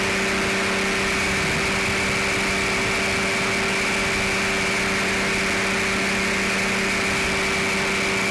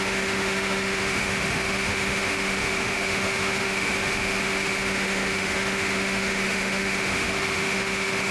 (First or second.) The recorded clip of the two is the first